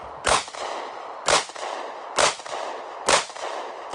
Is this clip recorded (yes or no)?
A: yes